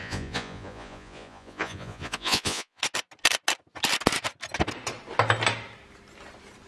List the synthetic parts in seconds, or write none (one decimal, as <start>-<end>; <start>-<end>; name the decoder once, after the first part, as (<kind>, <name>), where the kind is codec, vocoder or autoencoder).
0.0-2.8 (vocoder, Vocos)